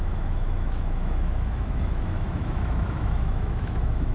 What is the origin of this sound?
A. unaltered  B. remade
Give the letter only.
B